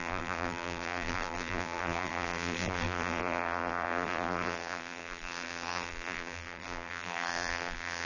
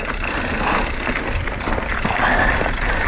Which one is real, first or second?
second